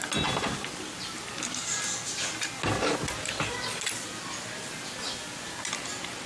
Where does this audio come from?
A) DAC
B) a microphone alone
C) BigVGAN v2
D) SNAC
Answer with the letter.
B